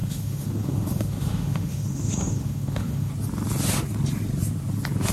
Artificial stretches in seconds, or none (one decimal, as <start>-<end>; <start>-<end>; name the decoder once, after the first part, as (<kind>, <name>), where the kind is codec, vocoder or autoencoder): 0.0-3.1 (autoencoder, DAC-VAE)